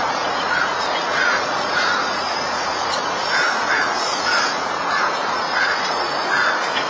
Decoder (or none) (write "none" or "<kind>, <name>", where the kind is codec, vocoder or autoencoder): vocoder, Vocos